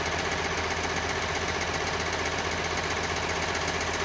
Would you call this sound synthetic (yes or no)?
no